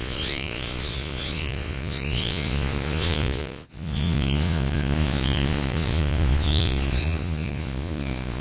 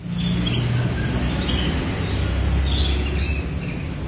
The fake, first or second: first